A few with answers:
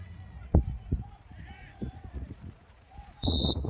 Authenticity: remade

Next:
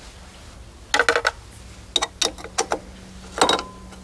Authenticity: recorded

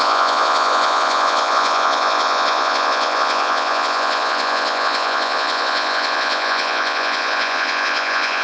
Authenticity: remade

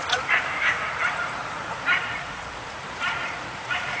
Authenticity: remade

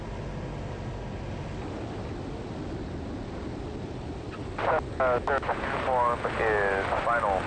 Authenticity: recorded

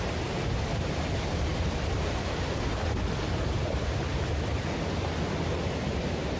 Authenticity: recorded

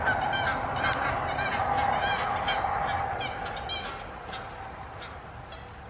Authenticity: recorded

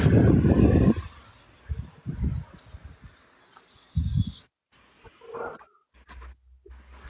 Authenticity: recorded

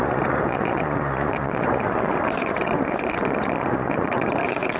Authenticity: remade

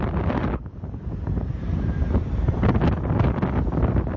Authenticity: recorded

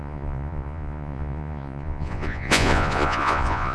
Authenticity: remade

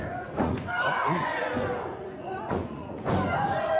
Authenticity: remade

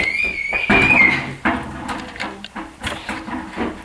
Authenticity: recorded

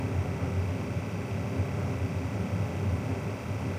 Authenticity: recorded